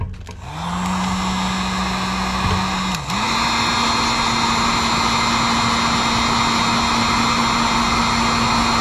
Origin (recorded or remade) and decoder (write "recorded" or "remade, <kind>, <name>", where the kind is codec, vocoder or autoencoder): recorded